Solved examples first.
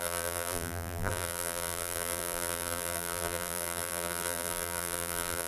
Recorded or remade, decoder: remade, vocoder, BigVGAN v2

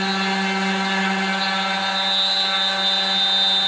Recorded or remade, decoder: recorded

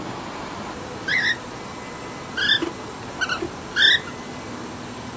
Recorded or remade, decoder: recorded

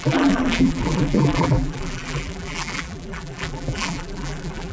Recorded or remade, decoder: remade, vocoder, BigVGAN v2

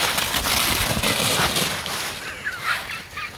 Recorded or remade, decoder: recorded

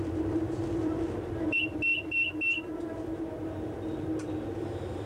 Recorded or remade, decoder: remade, vocoder, BigVGAN v2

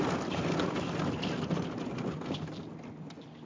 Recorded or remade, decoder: recorded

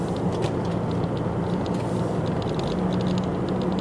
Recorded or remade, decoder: recorded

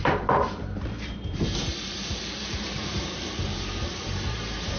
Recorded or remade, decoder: remade, vocoder, BigVGAN v2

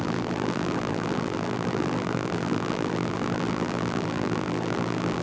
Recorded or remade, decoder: remade, vocoder, BigVGAN v2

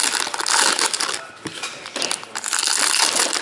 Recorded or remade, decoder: recorded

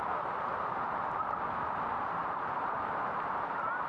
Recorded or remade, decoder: remade, vocoder, BigVGAN v2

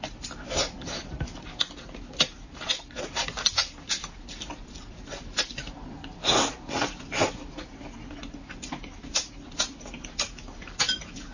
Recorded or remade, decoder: recorded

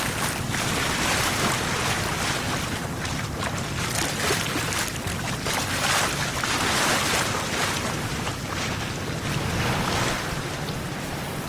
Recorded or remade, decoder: recorded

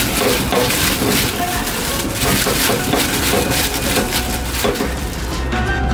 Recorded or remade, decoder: recorded